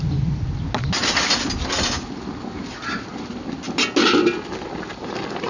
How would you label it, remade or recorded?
recorded